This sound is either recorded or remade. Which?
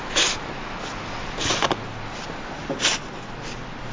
recorded